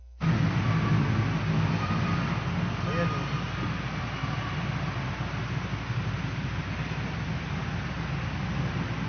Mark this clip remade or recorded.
recorded